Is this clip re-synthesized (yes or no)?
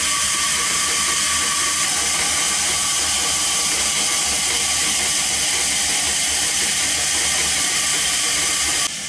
no